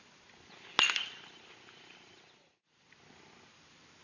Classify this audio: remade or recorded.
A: recorded